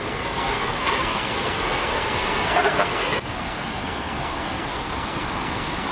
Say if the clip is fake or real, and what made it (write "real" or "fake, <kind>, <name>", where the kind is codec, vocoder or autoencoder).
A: fake, codec, SNAC